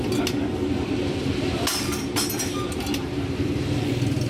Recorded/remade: recorded